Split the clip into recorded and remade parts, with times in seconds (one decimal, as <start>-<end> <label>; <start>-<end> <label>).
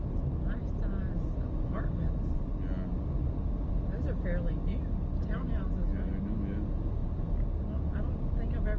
0.0-8.8 recorded